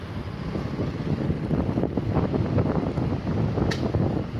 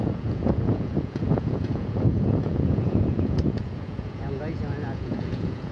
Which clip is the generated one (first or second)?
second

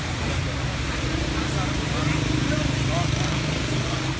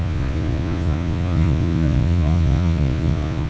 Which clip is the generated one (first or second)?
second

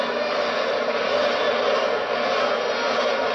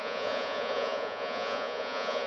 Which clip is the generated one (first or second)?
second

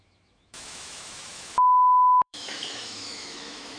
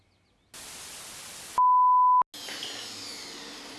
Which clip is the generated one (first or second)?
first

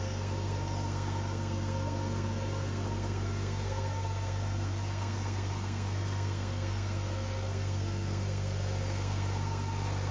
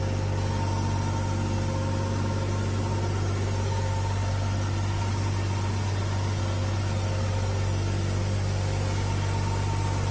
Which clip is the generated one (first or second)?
first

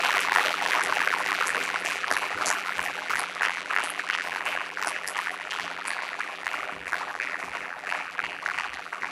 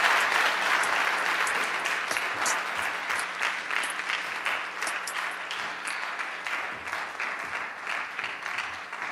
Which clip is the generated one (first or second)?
first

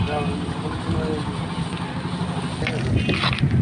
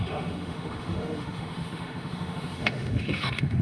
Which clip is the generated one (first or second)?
second